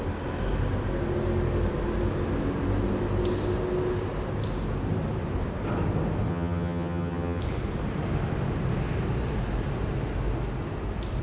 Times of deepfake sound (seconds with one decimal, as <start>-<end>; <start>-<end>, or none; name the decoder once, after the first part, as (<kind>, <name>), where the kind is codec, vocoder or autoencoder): 6.3-7.4 (vocoder, HiFi-GAN)